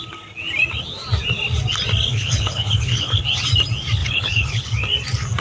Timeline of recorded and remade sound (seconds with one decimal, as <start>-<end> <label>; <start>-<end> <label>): 0.0-2.1 recorded; 2.1-3.2 remade; 3.2-4.0 recorded; 4.0-4.6 remade; 4.6-5.4 recorded

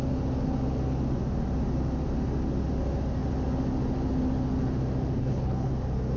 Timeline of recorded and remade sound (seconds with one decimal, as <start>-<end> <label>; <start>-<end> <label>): 0.0-5.2 recorded; 5.2-5.7 remade; 5.7-6.2 recorded

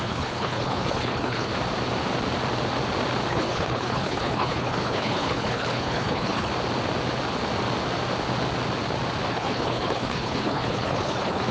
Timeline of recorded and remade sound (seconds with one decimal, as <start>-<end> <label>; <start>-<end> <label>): 0.0-1.5 remade; 1.5-3.3 recorded; 3.3-6.5 remade; 6.5-9.3 recorded; 9.3-11.5 remade

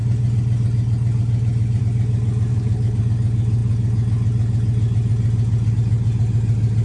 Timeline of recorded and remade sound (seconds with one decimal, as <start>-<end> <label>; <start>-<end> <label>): 0.0-2.5 recorded; 2.5-3.0 remade; 3.0-6.8 recorded

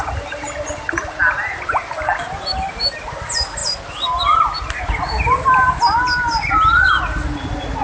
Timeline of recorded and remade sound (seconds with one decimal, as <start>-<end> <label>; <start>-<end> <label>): 0.0-7.8 recorded

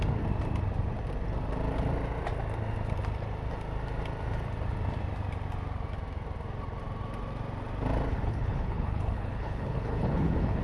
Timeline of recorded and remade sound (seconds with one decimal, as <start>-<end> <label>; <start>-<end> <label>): 0.0-8.1 recorded; 8.1-10.6 remade

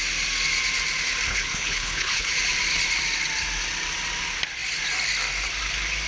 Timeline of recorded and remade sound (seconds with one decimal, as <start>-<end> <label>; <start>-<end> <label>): 0.0-1.3 recorded; 1.3-2.3 remade; 2.3-6.1 recorded